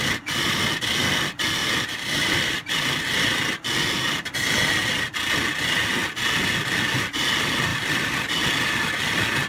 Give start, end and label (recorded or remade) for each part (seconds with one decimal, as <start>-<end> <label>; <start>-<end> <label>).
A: 0.0-1.6 recorded; 1.6-2.7 remade; 2.7-9.5 recorded